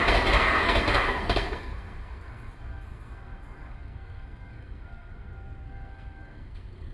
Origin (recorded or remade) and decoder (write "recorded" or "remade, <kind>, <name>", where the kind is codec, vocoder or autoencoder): remade, codec, SNAC